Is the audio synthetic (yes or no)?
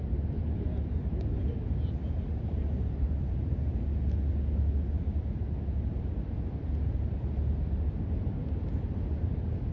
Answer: no